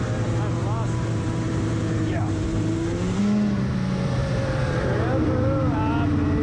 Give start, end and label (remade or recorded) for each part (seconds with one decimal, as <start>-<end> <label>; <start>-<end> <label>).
0.0-0.6 recorded; 0.6-3.2 remade; 3.2-4.2 recorded; 4.2-5.8 remade; 5.8-6.4 recorded